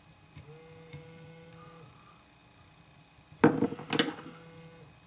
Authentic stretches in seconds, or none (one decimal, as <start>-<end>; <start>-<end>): 0.0-0.9; 1.5-5.1